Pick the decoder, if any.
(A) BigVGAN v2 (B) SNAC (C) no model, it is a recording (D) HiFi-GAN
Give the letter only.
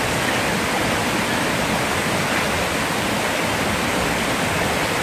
C